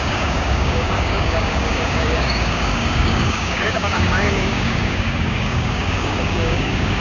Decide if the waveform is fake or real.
fake